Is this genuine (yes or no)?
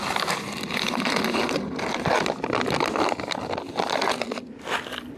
yes